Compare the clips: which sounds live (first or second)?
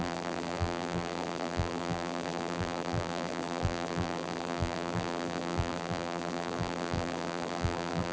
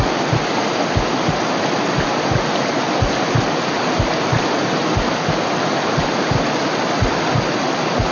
second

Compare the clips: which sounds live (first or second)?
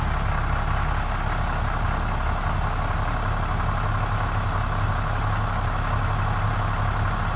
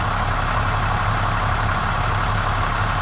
first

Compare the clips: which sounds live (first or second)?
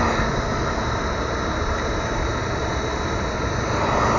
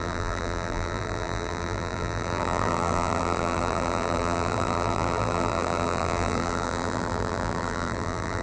first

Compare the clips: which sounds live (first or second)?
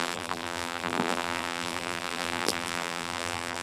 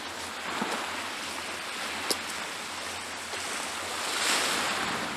second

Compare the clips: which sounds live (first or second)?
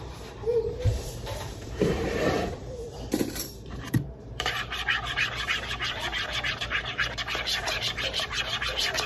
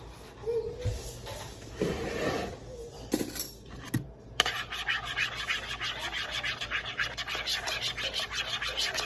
second